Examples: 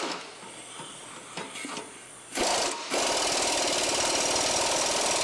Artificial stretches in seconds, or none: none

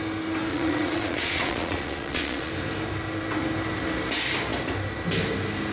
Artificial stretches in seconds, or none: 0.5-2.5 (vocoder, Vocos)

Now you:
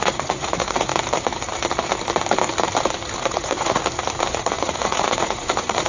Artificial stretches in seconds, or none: 0.0-0.9 (vocoder, Vocos); 3.2-3.8; 4.4-5.9